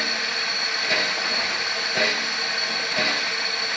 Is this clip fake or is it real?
real